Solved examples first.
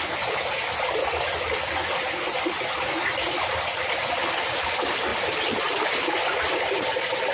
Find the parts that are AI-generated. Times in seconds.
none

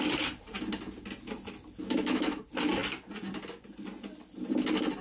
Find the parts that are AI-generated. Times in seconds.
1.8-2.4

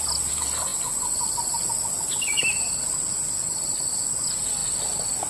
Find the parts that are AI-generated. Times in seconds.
none

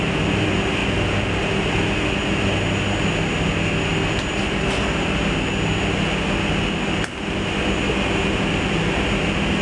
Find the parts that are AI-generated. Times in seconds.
none

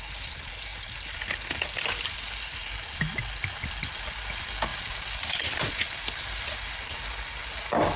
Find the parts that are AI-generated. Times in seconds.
none